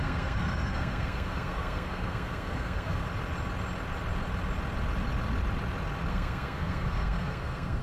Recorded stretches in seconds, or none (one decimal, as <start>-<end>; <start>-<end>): 3.0-6.1